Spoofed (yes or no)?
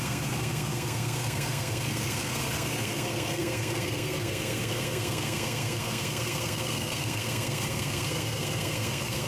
yes